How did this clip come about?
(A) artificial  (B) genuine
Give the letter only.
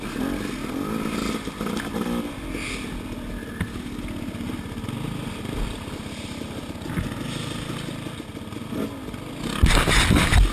B